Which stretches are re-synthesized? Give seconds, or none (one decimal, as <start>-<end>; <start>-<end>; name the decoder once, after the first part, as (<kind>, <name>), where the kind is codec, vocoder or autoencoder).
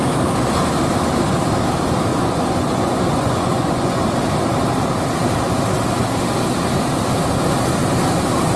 2.1-4.0 (vocoder, Vocos)